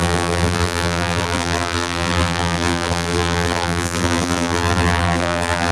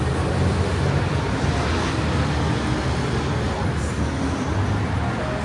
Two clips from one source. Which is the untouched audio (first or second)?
second